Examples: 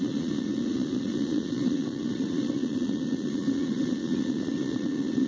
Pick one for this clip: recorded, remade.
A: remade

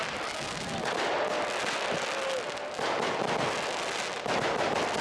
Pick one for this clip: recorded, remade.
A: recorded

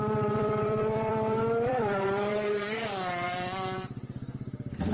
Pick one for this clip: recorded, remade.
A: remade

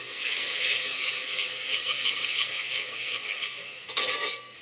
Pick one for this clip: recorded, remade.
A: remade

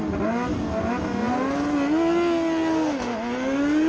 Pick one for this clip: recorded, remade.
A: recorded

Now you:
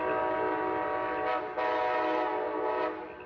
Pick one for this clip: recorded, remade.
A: recorded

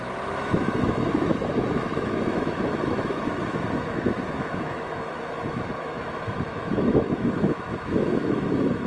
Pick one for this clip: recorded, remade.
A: remade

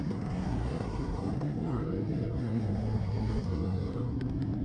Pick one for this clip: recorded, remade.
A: remade